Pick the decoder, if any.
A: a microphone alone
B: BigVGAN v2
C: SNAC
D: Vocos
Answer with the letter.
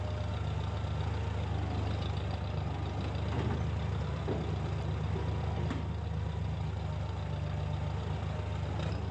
A